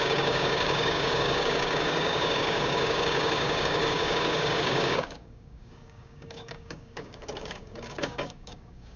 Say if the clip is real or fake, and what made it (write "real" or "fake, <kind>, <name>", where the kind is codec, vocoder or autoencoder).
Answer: fake, codec, DAC